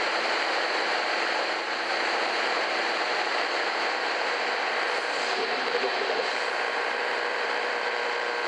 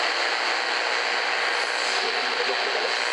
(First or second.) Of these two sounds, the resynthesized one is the first